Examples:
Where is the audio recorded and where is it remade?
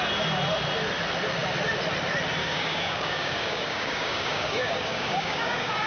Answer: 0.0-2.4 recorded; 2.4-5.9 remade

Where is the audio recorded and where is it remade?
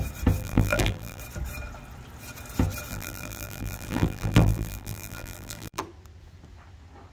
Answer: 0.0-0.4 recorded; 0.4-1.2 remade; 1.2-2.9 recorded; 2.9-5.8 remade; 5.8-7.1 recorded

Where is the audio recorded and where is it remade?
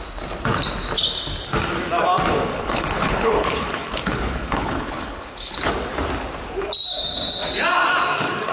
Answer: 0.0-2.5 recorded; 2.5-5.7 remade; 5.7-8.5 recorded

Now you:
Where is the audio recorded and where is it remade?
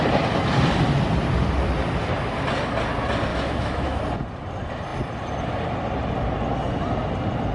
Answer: 0.0-3.3 recorded; 3.3-4.0 remade; 4.0-7.5 recorded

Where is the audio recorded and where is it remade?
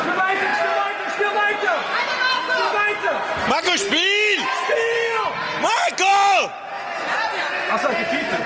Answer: 0.0-8.5 recorded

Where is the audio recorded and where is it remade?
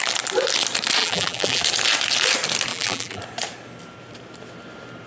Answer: 0.0-1.0 recorded; 1.0-1.6 remade; 1.6-2.7 recorded; 2.7-3.2 remade; 3.2-5.1 recorded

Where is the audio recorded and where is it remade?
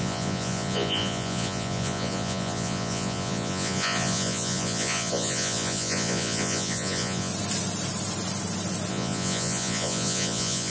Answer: 0.0-7.3 remade; 7.3-8.9 recorded; 8.9-10.7 remade